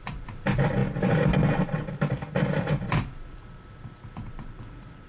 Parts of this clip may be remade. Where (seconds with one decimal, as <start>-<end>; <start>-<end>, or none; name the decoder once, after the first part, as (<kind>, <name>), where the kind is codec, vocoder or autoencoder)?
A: 0.0-0.8 (vocoder, BigVGAN v2); 1.9-5.1